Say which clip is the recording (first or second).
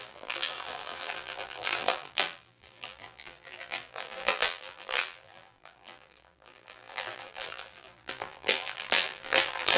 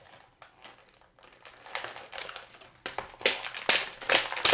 second